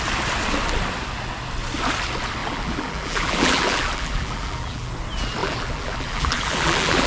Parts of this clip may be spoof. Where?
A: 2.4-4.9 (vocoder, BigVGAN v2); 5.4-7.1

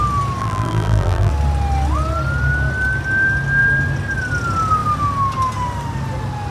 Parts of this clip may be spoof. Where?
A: 0.4-1.3 (vocoder, BigVGAN v2)

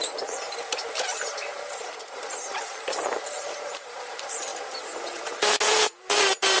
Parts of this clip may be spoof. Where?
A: 0.0-6.6 (vocoder, BigVGAN v2)

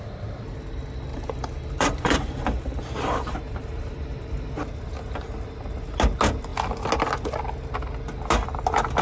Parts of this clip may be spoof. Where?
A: 1.1-4.3 (vocoder, BigVGAN v2)

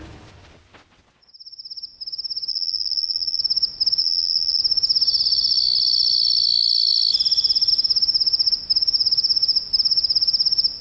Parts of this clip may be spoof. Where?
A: 2.5-3.4 (vocoder, BigVGAN v2); 4.0-4.6